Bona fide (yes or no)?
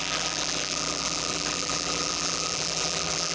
no